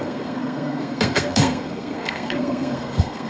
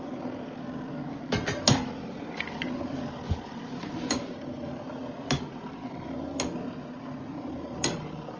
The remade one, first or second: first